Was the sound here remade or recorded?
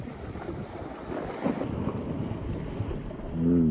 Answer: recorded